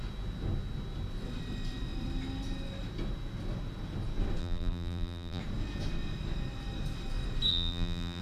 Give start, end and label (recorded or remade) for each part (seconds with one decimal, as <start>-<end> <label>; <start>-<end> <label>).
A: 0.0-4.4 recorded; 4.4-5.4 remade; 5.4-7.5 recorded; 7.5-8.2 remade

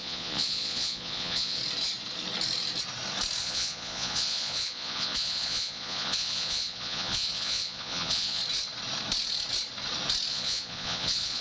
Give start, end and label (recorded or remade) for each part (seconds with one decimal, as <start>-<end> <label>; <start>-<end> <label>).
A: 0.0-1.6 remade; 1.6-3.4 recorded; 3.4-8.4 remade; 8.4-10.3 recorded; 10.3-11.4 remade

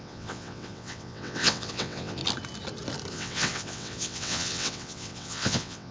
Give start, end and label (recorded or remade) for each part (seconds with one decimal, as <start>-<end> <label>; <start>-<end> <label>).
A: 0.0-2.2 remade; 2.2-3.1 recorded; 3.1-5.9 remade

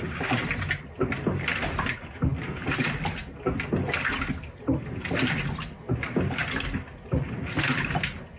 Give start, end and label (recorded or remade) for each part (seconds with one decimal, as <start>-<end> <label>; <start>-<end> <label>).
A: 0.0-8.4 recorded

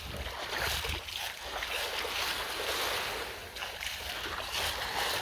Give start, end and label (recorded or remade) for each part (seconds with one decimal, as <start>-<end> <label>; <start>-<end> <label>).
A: 0.0-3.4 recorded; 3.4-5.2 remade

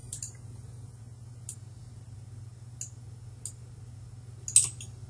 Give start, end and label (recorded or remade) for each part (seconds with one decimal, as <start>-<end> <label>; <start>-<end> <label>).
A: 0.0-1.0 remade; 1.0-5.1 recorded